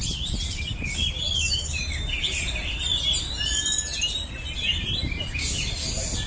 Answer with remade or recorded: recorded